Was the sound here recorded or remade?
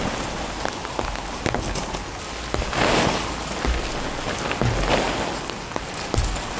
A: recorded